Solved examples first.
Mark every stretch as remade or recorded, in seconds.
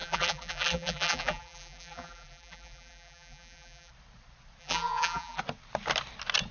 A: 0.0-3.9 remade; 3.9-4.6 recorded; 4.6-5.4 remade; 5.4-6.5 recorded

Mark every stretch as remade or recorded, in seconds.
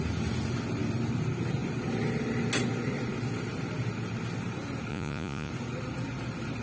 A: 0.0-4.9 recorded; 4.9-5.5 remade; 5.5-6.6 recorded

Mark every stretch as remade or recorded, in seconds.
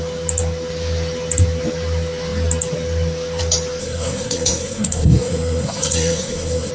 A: 0.0-3.8 recorded; 3.8-6.7 remade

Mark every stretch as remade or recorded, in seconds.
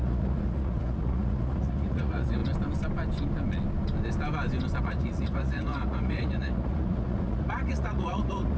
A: 0.0-2.4 remade; 2.4-4.8 recorded; 4.8-8.6 remade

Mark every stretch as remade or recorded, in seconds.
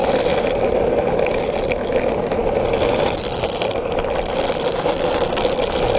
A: 0.0-6.0 recorded